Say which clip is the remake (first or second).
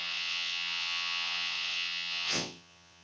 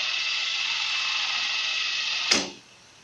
first